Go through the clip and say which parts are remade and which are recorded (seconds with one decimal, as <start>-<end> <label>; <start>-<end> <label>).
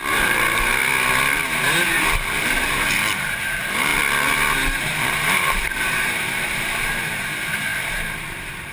0.0-0.7 remade; 0.7-2.4 recorded; 2.4-3.9 remade; 3.9-4.8 recorded; 4.8-8.7 remade